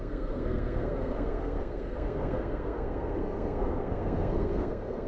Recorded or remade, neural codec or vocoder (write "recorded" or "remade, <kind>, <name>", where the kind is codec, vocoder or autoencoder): remade, codec, SNAC